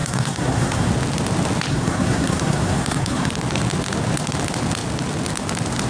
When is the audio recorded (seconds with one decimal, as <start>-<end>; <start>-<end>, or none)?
0.9-1.7; 3.3-5.9